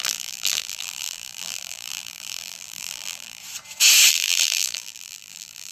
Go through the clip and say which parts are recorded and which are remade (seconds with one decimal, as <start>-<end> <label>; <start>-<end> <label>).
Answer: 0.0-3.4 remade; 3.4-4.1 recorded; 4.1-5.7 remade